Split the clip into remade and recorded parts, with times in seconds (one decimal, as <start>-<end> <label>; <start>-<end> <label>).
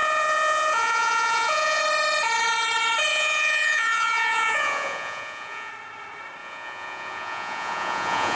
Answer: 0.0-1.8 remade; 1.8-3.1 recorded; 3.1-5.7 remade; 5.7-6.4 recorded; 6.4-8.4 remade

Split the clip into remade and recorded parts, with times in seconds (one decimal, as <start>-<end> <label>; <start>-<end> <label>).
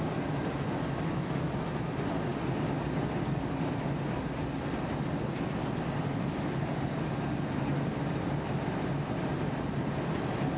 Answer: 0.0-10.6 recorded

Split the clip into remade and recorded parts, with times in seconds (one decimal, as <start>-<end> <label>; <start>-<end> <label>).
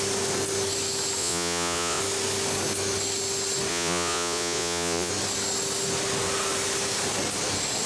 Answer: 0.0-1.2 recorded; 1.2-2.0 remade; 2.0-3.7 recorded; 3.7-5.1 remade; 5.1-7.9 recorded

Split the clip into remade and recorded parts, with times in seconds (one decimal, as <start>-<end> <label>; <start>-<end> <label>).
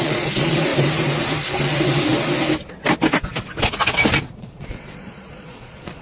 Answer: 0.0-0.7 remade; 0.7-4.3 recorded; 4.3-6.0 remade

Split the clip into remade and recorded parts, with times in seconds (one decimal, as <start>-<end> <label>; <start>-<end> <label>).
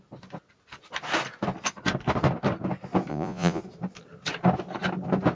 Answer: 0.0-3.1 recorded; 3.1-3.6 remade; 3.6-5.3 recorded